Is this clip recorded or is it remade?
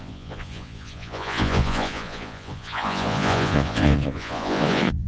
remade